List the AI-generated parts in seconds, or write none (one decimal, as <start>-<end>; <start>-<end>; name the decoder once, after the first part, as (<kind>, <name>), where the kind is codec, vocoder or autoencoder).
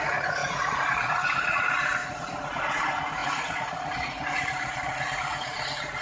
0.0-6.0 (vocoder, Vocos)